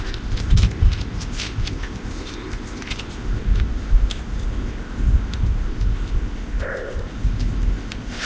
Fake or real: fake